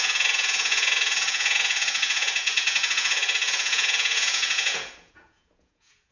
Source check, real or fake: fake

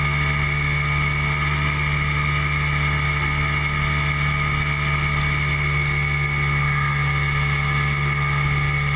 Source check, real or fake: real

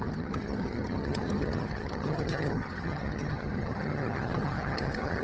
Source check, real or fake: fake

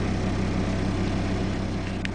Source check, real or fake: real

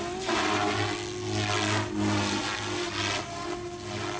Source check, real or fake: real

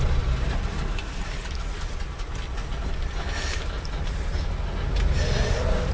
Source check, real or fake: real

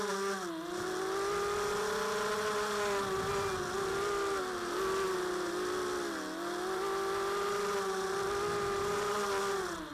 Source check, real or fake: real